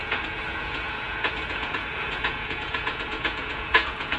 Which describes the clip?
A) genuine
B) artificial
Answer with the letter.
B